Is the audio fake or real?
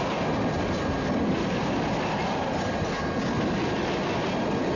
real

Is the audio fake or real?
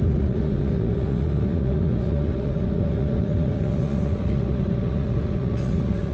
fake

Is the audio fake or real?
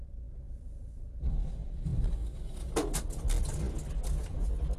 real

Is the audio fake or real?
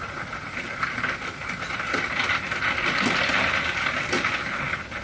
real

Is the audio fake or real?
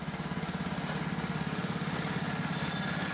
real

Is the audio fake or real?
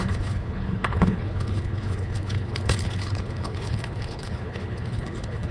fake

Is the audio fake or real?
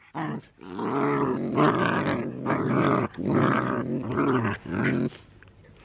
real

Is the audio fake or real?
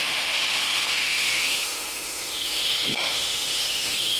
fake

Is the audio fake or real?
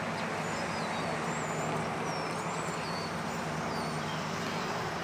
real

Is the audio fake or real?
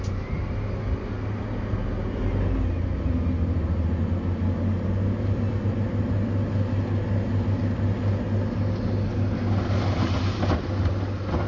real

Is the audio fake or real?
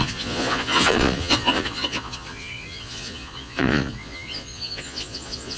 fake